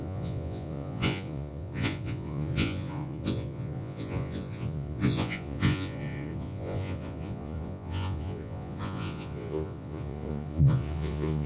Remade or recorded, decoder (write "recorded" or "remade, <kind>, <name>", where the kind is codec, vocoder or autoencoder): remade, vocoder, Vocos